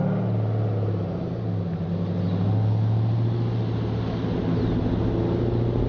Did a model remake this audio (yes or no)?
no